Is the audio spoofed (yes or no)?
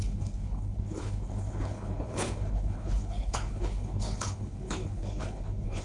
yes